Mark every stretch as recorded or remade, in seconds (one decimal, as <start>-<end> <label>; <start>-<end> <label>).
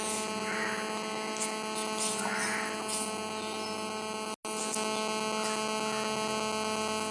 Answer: 0.0-7.1 recorded